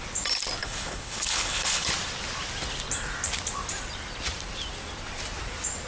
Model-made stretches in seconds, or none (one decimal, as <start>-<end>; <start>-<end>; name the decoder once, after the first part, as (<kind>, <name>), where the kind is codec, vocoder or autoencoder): 0.6-1.9 (codec, HILCodec)